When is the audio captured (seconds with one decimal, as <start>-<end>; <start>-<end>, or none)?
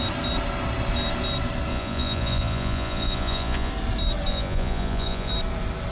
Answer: 0.0-1.7; 3.7-4.3; 5.3-5.9